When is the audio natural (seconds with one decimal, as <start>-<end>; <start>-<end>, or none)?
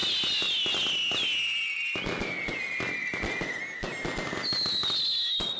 0.0-5.6